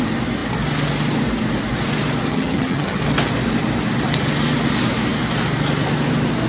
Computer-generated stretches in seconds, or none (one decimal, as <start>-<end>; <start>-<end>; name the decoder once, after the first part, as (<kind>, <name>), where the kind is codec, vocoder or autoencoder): 2.3-3.0 (vocoder, HiFi-GAN)